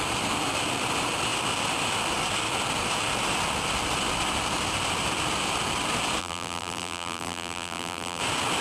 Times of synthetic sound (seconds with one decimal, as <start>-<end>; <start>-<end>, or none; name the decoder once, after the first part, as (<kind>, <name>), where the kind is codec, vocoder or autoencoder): 6.2-8.2 (vocoder, BigVGAN v2)